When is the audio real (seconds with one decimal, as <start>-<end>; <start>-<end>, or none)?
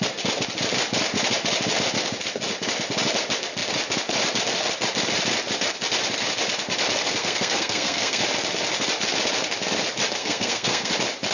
0.0-7.2; 8.2-10.2; 10.9-11.3